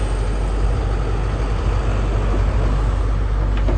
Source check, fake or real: real